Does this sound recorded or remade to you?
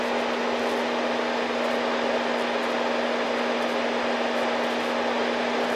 recorded